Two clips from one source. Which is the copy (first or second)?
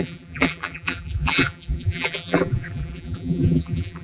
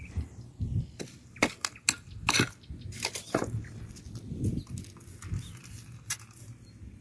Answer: first